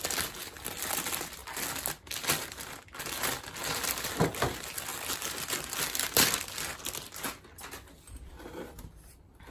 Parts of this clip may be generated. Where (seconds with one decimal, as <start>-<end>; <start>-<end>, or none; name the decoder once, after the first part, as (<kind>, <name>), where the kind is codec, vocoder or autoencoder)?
none